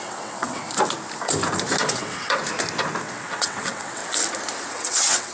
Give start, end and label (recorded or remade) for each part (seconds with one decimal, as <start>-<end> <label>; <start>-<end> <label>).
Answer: 0.0-0.6 remade; 0.6-1.9 recorded; 1.9-2.4 remade; 2.4-3.0 recorded; 3.0-4.0 remade; 4.0-4.7 recorded; 4.7-5.3 remade